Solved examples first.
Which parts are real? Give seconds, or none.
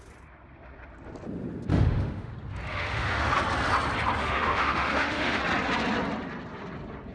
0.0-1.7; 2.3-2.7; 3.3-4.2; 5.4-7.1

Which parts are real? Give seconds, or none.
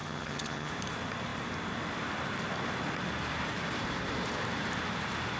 0.7-5.4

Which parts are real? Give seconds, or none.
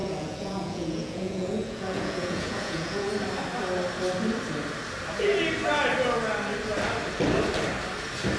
3.1-8.4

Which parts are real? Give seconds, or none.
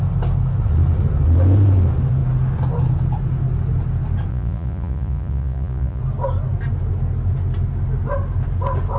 0.0-4.3; 6.0-9.0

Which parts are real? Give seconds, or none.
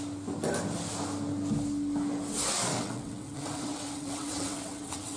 0.0-2.7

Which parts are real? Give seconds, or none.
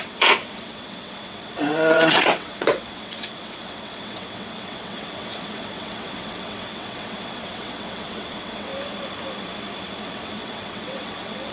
8.7-10.0